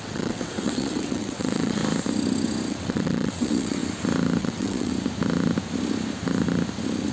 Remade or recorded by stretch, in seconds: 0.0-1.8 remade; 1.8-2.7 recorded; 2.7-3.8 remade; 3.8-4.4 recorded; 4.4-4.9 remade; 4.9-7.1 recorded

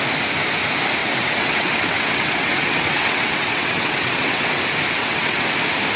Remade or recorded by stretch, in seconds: 0.0-1.0 recorded; 1.0-4.6 remade; 4.6-5.0 recorded; 5.0-5.5 remade; 5.5-6.0 recorded

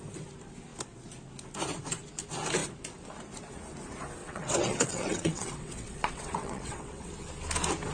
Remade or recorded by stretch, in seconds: 0.0-4.2 recorded; 4.2-7.1 remade; 7.1-7.9 recorded